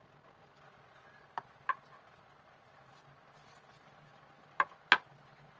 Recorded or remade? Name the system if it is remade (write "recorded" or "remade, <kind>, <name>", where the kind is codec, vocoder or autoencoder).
recorded